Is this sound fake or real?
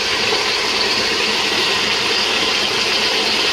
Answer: real